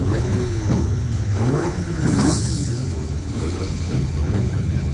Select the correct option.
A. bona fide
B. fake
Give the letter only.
B